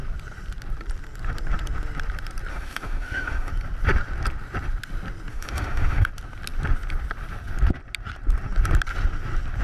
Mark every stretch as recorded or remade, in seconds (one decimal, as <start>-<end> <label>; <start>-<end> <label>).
0.0-2.5 recorded; 2.5-3.5 remade; 3.5-5.3 recorded; 5.3-6.1 remade; 6.1-9.6 recorded